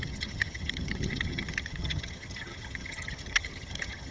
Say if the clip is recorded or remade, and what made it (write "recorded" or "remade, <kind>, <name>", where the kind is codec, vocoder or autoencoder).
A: remade, vocoder, HiFi-GAN